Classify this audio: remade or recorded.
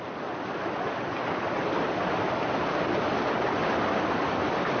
recorded